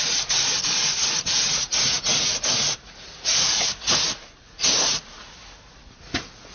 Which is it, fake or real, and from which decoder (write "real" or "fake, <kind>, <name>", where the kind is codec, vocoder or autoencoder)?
fake, vocoder, Vocos